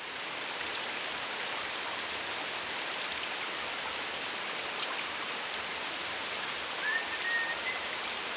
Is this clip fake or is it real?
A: real